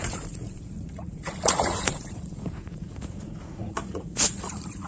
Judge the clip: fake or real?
fake